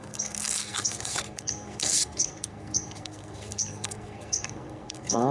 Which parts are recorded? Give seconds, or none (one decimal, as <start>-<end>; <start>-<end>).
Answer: none